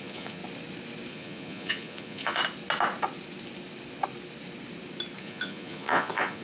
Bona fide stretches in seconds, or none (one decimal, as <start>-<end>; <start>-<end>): 0.4-1.1; 2.4-5.2